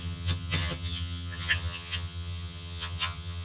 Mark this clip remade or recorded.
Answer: remade